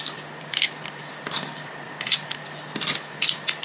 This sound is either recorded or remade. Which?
recorded